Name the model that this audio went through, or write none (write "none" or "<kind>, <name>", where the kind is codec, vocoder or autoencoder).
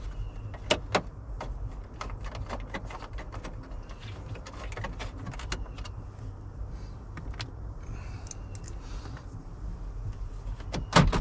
none